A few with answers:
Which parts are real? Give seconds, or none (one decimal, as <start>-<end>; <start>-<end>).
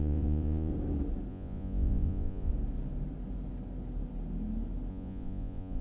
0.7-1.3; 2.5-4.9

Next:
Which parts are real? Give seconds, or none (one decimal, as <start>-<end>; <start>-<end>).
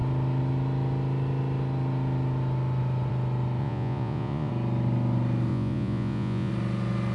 0.0-3.6; 4.5-5.5; 6.5-7.1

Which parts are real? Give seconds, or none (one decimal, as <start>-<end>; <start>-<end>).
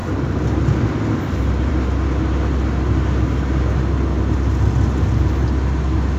0.0-6.2